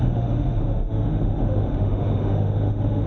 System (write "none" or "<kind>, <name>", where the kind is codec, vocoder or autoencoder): autoencoder, DAC-VAE